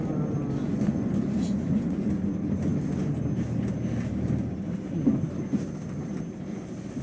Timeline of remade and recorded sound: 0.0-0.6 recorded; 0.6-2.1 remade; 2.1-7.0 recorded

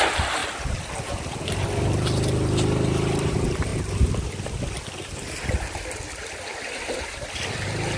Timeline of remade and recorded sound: 0.0-8.0 recorded

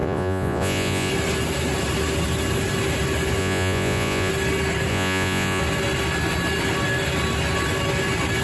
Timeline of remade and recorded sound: 0.0-1.1 remade; 1.1-3.4 recorded; 3.4-4.3 remade; 4.3-4.9 recorded; 4.9-5.6 remade; 5.6-8.4 recorded

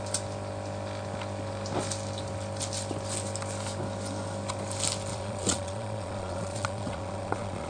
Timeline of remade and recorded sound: 0.0-5.1 recorded; 5.1-7.7 remade